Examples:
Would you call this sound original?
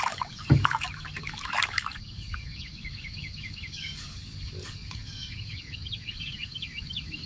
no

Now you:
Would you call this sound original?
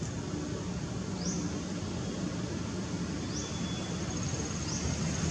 yes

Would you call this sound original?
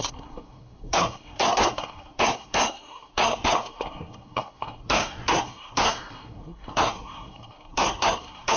no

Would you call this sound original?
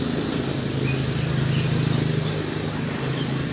yes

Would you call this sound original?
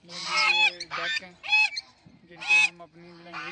no